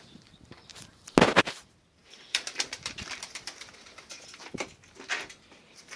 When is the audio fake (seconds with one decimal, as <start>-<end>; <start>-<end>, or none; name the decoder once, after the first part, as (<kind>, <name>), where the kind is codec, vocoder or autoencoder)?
0.0-0.7 (vocoder, BigVGAN v2); 1.5-6.0